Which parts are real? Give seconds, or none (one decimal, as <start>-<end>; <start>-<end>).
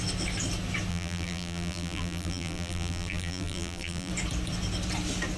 0.0-0.9; 4.1-5.4